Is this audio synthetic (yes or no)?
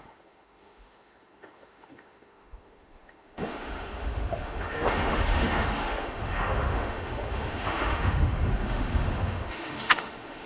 yes